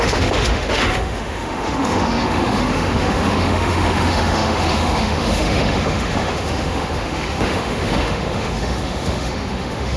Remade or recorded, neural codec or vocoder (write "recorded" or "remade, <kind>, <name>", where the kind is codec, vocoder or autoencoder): remade, autoencoder, DAC-VAE